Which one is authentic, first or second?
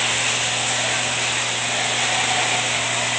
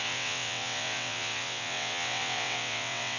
first